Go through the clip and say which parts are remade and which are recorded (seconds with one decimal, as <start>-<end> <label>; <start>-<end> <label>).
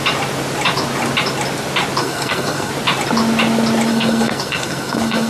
0.0-2.0 recorded; 2.0-2.7 remade; 2.7-3.9 recorded; 3.9-5.3 remade